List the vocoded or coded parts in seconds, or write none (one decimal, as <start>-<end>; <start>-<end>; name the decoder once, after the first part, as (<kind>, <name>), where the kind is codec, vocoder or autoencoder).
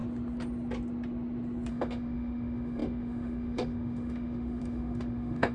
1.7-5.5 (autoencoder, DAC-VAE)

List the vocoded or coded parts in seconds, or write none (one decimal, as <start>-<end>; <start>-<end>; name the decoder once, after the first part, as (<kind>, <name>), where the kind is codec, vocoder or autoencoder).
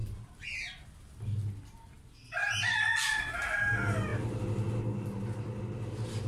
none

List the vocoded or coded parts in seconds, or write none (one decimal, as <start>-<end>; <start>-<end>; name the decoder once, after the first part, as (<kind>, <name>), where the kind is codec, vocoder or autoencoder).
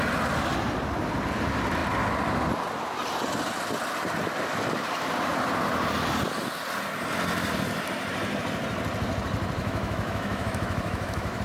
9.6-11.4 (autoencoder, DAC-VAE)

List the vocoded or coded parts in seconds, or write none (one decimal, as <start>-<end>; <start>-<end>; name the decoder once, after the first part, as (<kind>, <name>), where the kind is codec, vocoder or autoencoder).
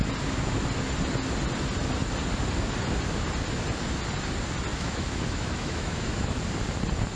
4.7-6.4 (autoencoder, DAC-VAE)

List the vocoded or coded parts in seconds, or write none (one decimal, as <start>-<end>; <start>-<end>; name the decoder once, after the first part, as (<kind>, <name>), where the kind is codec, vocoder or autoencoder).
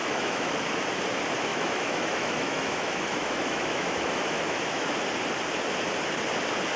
0.0-0.5 (autoencoder, DAC-VAE); 1.5-4.9